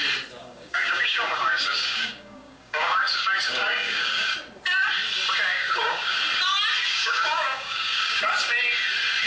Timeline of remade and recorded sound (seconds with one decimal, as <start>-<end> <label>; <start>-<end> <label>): 0.0-0.4 recorded; 0.4-4.3 remade; 4.3-5.5 recorded; 5.5-6.2 remade; 6.2-6.8 recorded; 6.8-8.2 remade; 8.2-9.3 recorded